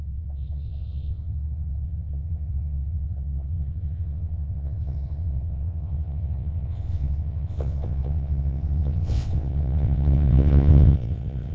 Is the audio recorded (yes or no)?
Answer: no